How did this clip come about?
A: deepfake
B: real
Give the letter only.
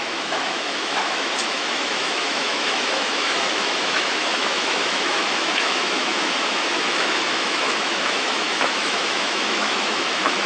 A